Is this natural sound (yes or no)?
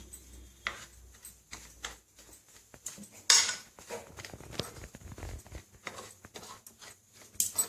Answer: yes